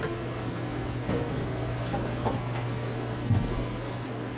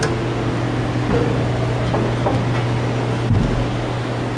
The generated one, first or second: first